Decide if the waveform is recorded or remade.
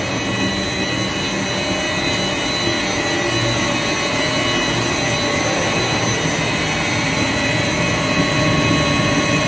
recorded